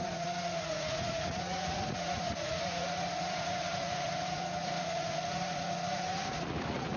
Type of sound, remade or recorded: remade